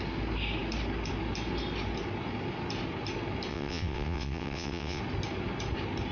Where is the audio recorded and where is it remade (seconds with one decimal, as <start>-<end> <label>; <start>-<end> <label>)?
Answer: 0.0-3.5 recorded; 3.5-5.0 remade; 5.0-6.1 recorded